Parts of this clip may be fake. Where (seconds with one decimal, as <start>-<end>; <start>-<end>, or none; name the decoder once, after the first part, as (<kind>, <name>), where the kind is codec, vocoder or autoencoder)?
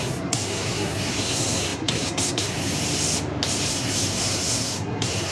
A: 0.0-2.7 (codec, SNAC); 3.7-5.3